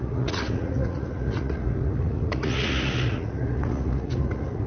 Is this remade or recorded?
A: remade